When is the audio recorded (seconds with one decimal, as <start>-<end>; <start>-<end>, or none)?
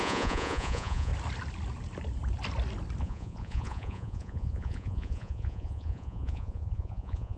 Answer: 1.1-3.0